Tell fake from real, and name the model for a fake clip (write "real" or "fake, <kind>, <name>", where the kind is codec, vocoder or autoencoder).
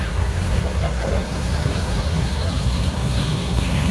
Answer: fake, codec, SNAC